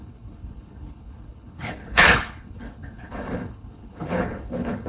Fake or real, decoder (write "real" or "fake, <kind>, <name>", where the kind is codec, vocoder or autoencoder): fake, codec, HILCodec